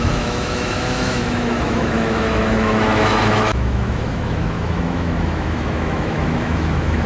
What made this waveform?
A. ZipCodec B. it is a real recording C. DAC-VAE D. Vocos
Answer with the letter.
C